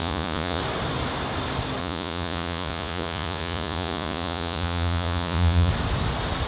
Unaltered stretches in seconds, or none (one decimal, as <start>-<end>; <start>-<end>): 0.6-1.8; 5.7-6.5